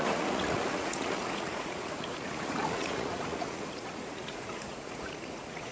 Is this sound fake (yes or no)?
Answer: yes